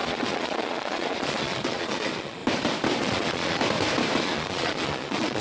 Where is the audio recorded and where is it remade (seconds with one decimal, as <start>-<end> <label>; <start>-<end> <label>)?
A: 0.0-2.4 remade; 2.4-3.0 recorded; 3.0-3.6 remade; 3.6-4.2 recorded; 4.2-5.4 remade